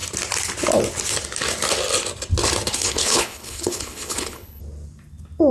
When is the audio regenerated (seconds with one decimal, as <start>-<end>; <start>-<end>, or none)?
2.7-4.6